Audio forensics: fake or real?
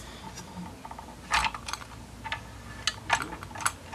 real